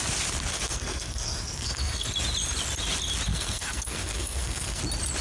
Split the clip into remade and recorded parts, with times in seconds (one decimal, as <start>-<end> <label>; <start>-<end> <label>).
0.0-0.5 recorded; 0.5-2.1 remade; 2.1-3.3 recorded; 3.3-4.8 remade; 4.8-5.2 recorded